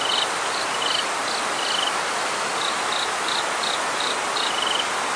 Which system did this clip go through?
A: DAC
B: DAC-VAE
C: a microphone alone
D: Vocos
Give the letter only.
C